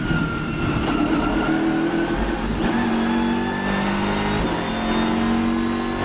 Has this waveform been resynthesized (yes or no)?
no